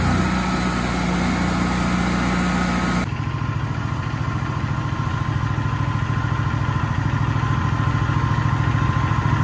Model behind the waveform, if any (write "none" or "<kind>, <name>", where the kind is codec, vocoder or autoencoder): none